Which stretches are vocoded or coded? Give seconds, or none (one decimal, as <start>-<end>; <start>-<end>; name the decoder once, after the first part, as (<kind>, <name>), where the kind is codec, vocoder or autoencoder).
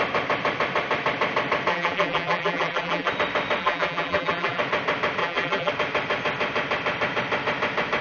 1.7-3.1 (vocoder, BigVGAN v2); 3.6-4.6; 5.2-5.7